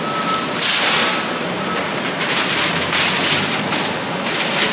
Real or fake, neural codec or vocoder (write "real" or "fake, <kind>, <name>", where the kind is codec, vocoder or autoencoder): real